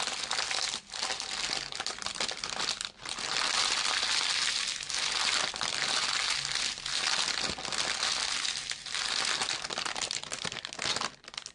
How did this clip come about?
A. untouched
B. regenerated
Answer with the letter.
A